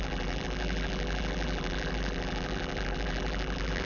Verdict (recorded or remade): remade